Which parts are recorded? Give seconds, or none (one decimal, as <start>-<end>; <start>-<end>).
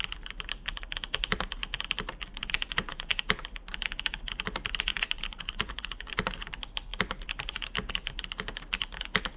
0.0-2.3; 3.2-4.9; 6.1-9.4